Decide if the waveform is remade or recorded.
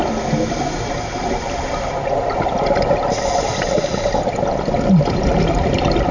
recorded